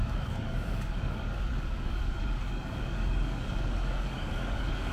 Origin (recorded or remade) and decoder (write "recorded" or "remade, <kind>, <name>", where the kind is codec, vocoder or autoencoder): remade, codec, DAC